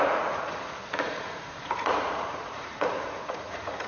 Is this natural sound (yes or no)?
no